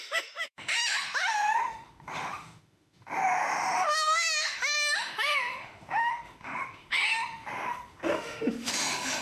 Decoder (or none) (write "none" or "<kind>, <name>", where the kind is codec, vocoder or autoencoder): autoencoder, DAC-VAE